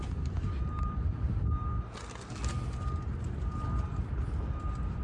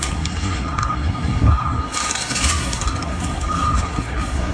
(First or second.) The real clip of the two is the first